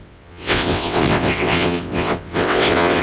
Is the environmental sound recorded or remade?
remade